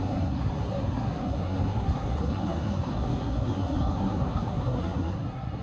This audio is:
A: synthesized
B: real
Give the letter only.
A